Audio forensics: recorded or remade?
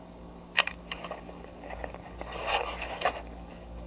remade